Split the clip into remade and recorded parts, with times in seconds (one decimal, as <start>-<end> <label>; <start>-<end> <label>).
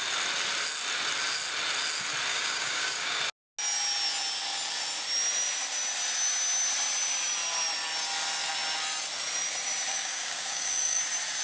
0.0-2.3 recorded; 2.3-3.2 remade; 3.2-9.9 recorded; 9.9-11.0 remade; 11.0-11.4 recorded